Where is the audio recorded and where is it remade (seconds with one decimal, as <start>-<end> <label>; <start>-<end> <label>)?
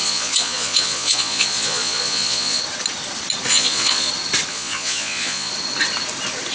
0.0-2.6 remade; 2.6-3.5 recorded; 3.5-4.1 remade; 4.1-4.5 recorded; 4.5-5.5 remade; 5.5-6.5 recorded